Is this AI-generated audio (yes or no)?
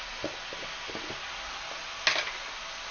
no